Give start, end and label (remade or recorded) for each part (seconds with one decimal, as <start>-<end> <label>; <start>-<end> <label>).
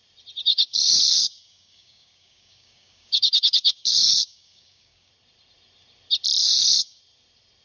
0.0-0.5 recorded; 0.5-5.1 remade; 5.1-6.4 recorded; 6.4-7.0 remade; 7.0-7.6 recorded